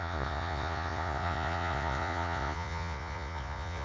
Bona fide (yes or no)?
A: no